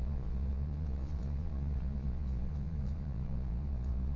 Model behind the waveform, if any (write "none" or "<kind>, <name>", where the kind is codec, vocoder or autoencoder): vocoder, Vocos